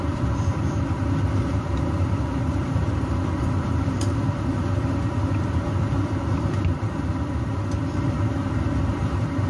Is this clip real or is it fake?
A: fake